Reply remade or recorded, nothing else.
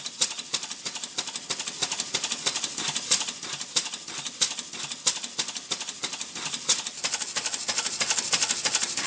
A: recorded